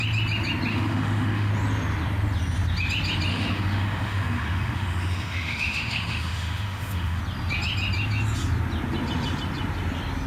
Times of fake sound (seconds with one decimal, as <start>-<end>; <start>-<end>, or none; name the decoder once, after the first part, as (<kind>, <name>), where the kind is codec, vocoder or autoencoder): 0.7-1.5 (autoencoder, DAC-VAE); 3.3-7.2